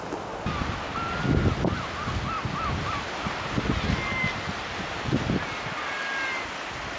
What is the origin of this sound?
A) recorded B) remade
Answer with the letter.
A